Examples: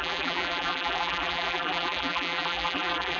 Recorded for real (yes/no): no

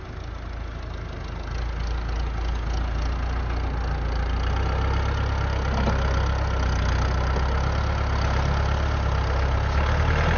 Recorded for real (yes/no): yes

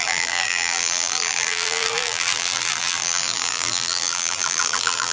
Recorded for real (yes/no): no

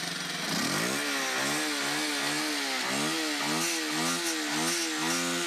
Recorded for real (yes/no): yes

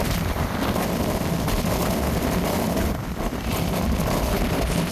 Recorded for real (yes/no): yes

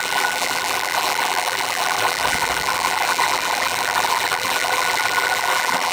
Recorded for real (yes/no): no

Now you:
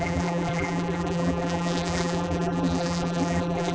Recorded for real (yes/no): no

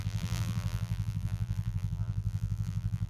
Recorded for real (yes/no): no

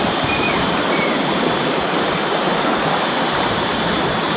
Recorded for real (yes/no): no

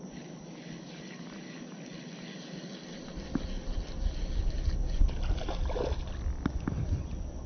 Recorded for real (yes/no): yes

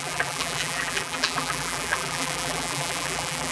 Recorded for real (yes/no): no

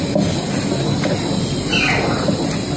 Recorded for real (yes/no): yes